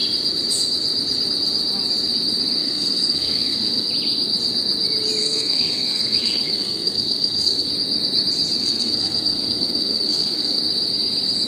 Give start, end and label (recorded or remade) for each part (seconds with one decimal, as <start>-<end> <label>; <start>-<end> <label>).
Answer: 0.0-2.6 recorded; 2.6-3.9 remade; 3.9-5.2 recorded; 5.2-7.7 remade; 7.7-8.6 recorded; 8.6-10.6 remade; 10.6-11.5 recorded

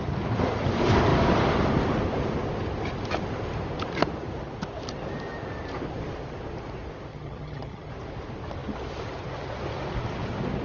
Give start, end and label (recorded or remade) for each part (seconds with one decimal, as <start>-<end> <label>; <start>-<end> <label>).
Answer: 0.0-7.1 recorded; 7.1-7.9 remade; 7.9-10.6 recorded